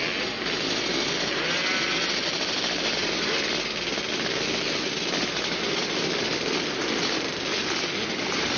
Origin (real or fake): real